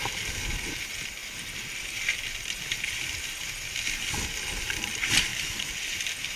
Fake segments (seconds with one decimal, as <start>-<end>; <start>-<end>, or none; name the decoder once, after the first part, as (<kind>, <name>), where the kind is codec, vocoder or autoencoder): none